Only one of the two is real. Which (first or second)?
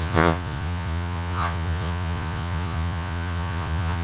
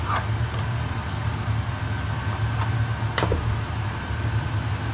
second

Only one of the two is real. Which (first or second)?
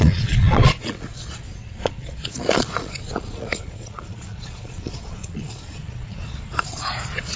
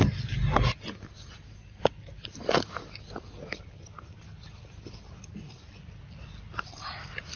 second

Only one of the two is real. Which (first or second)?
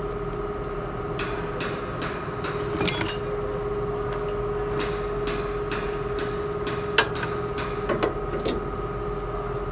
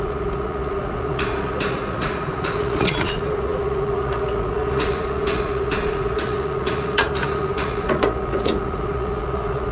first